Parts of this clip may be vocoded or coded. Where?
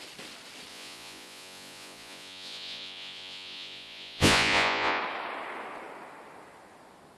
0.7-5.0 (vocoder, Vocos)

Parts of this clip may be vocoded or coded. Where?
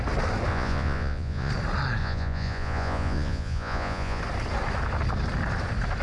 0.5-1.5 (vocoder, Vocos); 2.0-4.2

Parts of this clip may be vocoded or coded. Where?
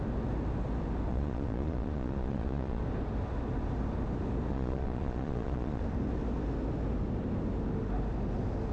1.1-2.8 (vocoder, Vocos); 4.5-5.8